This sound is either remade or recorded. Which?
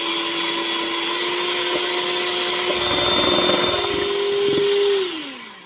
recorded